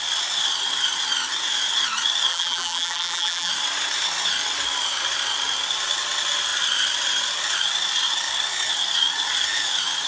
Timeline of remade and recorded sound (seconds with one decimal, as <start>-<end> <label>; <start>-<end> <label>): 0.0-2.3 recorded; 2.3-3.5 remade; 3.5-10.1 recorded